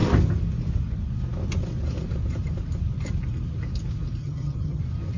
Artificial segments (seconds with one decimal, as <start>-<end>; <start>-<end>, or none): 4.2-4.8

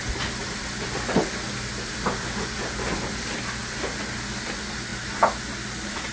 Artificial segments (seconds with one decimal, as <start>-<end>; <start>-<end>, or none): none

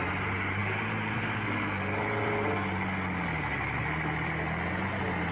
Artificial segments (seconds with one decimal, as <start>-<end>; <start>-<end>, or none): none